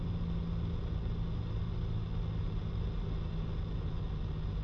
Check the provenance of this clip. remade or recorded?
recorded